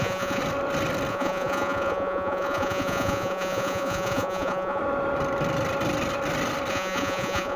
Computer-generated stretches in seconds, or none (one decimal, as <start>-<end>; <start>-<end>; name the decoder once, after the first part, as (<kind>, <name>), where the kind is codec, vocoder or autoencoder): 0.0-0.4 (vocoder, Vocos); 1.1-4.8; 6.7-7.6